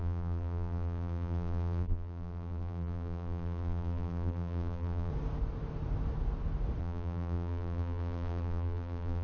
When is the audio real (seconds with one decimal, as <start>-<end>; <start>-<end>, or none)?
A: 5.1-6.8